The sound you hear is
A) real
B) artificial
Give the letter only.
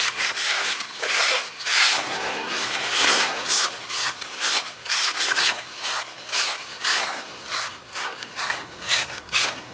B